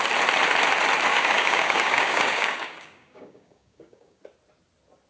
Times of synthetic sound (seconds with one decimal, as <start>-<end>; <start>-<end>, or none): 1.1-4.2